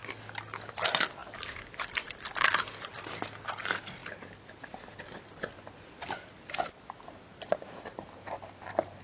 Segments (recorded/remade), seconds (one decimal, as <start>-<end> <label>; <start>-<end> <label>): 0.0-9.0 recorded